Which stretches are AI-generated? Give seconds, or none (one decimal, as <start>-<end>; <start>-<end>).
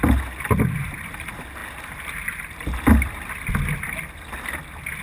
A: none